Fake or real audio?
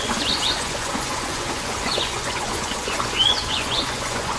fake